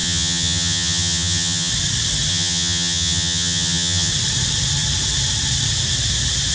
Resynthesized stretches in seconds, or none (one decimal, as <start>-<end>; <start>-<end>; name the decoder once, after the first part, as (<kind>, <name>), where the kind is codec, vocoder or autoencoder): 0.0-1.7 (vocoder, HiFi-GAN); 2.3-4.1